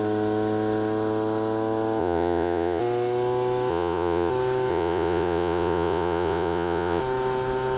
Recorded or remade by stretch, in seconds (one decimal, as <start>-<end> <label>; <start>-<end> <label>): 0.0-2.0 recorded; 2.0-2.8 remade; 2.8-3.7 recorded; 3.7-4.3 remade; 4.3-4.7 recorded; 4.7-7.0 remade; 7.0-7.8 recorded